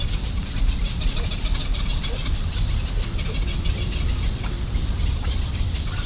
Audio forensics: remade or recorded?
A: remade